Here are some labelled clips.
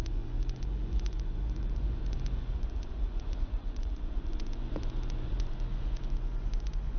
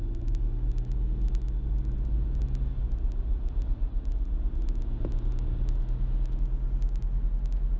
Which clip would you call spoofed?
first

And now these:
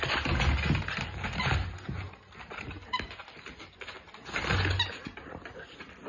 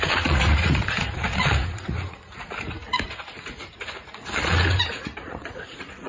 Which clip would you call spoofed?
second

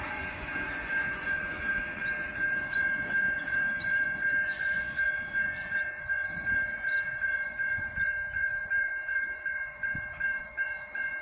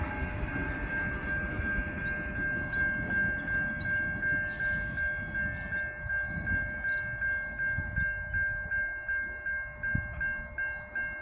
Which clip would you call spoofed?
first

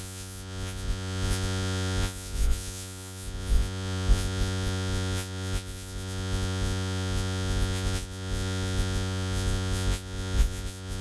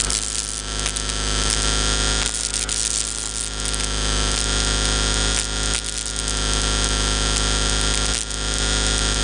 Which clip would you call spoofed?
first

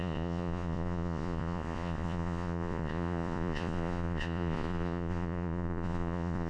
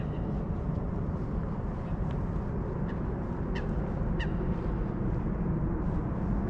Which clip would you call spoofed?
first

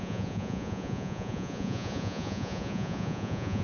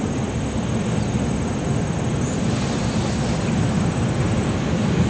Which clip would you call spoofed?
first